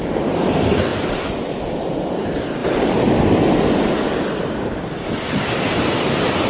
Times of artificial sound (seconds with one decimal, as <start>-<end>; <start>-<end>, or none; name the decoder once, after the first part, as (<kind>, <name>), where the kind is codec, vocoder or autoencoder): 0.0-0.9 (vocoder, BigVGAN v2); 1.6-6.5